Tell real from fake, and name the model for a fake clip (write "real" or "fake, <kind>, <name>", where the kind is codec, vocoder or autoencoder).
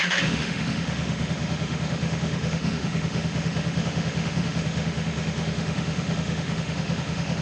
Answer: fake, autoencoder, DAC-VAE